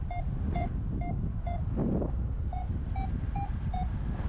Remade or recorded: recorded